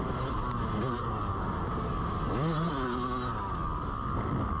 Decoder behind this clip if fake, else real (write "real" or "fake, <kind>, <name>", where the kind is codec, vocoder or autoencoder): real